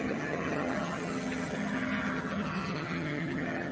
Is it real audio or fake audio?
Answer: fake